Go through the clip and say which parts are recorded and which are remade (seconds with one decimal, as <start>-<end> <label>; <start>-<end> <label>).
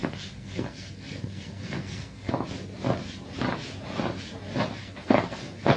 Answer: 0.0-2.3 remade; 2.3-4.8 recorded; 4.8-5.8 remade